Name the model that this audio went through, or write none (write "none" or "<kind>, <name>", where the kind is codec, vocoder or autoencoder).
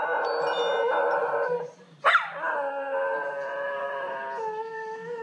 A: none